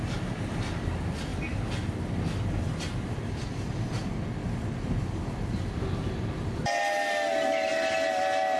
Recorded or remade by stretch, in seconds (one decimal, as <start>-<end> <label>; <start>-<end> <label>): 0.0-8.6 recorded